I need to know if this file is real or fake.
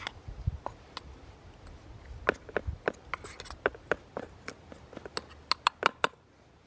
real